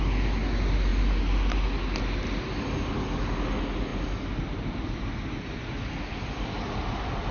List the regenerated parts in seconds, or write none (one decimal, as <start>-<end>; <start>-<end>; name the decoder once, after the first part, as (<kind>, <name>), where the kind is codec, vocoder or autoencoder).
none